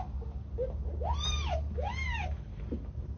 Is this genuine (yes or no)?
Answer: yes